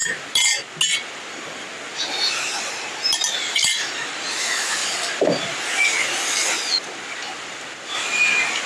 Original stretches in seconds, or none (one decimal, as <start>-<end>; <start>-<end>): 0.0-4.3; 4.8-8.7